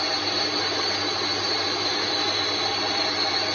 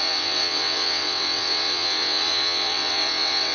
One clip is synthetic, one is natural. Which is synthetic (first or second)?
second